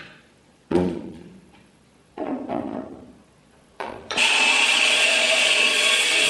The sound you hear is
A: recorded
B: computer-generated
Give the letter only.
B